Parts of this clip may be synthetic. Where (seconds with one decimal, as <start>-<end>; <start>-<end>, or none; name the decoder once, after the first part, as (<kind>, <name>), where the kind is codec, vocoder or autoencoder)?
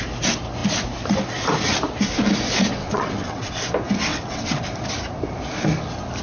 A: 2.8-3.5 (vocoder, WaveNeXt); 4.1-4.6